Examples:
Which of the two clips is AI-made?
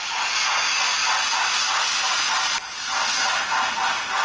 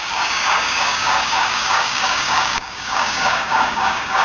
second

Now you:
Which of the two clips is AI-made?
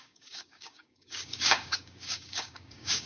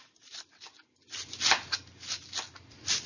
first